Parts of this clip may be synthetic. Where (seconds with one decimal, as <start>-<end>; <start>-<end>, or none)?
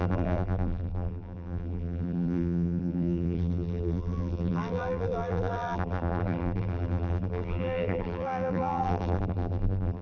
0.0-10.0